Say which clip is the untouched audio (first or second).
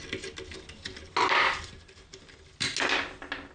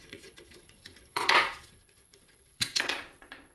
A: first